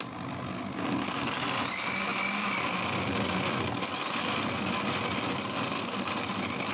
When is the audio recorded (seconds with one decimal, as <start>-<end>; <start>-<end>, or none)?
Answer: 0.0-6.7